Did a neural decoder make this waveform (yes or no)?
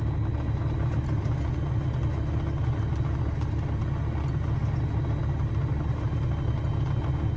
no